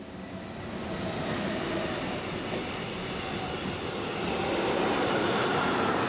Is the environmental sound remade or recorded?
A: recorded